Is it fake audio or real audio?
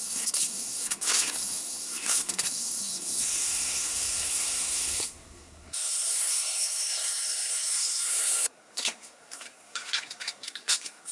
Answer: fake